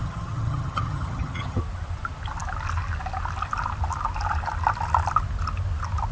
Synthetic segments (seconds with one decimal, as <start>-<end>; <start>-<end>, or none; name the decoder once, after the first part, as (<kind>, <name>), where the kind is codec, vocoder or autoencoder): 0.0-1.6 (vocoder, HiFi-GAN)